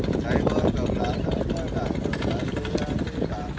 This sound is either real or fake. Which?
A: real